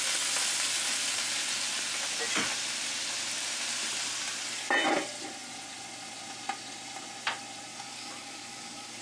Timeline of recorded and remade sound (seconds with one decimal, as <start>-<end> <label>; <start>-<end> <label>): 0.0-7.7 recorded; 7.7-9.0 remade